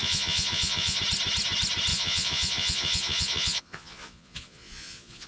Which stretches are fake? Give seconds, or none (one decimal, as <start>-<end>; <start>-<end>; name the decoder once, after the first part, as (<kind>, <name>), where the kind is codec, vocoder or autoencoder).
0.0-1.0 (vocoder, Vocos); 1.9-5.3